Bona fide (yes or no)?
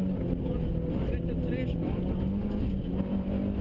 yes